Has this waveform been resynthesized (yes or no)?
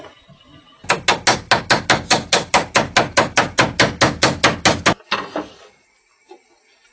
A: no